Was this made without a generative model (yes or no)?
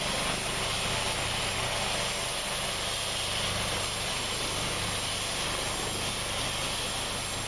yes